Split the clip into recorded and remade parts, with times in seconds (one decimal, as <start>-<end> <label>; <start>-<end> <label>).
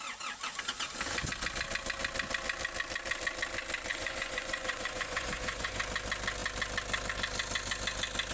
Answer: 0.0-3.9 recorded; 3.9-5.8 remade; 5.8-8.3 recorded